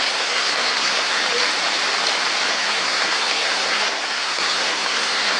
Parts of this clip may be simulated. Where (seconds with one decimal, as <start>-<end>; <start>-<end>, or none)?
0.0-1.2; 2.5-5.4